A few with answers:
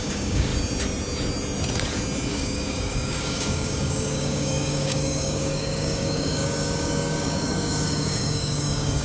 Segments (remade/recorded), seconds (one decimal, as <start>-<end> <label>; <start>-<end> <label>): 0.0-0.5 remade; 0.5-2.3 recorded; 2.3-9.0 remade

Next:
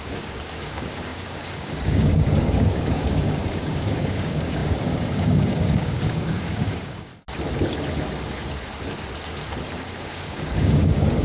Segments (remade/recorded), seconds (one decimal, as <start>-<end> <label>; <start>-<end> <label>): 0.0-7.1 remade; 7.1-9.8 recorded; 9.8-11.2 remade

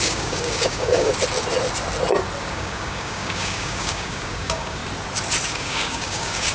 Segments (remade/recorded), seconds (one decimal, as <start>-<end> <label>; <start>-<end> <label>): 0.0-1.1 remade; 1.1-2.4 recorded; 2.4-4.8 remade; 4.8-5.5 recorded; 5.5-6.5 remade